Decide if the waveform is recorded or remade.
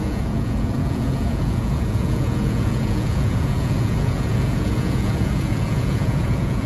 remade